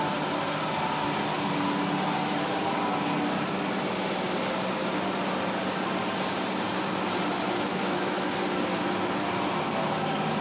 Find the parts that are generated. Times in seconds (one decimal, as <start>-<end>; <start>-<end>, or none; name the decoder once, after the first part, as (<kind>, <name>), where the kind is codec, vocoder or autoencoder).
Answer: 7.7-8.3 (autoencoder, DAC-VAE)